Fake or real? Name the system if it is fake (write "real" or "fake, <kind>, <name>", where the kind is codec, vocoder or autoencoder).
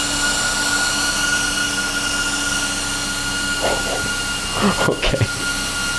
real